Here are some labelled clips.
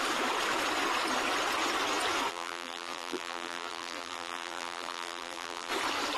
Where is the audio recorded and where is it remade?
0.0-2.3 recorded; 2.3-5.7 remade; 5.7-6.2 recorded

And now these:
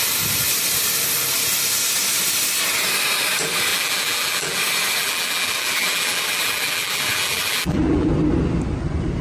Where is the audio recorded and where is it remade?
0.0-3.7 recorded; 3.7-4.6 remade; 4.6-5.0 recorded; 5.0-8.1 remade; 8.1-9.2 recorded

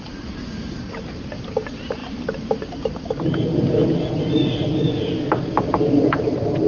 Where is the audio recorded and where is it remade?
0.0-6.7 recorded

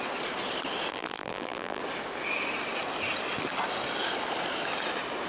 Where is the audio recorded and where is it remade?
0.0-0.9 recorded; 0.9-1.8 remade; 1.8-5.3 recorded

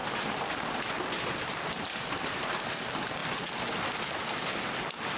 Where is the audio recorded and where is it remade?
0.0-5.2 recorded

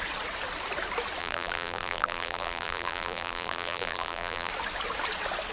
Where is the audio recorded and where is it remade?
0.0-1.2 recorded; 1.2-4.5 remade; 4.5-5.5 recorded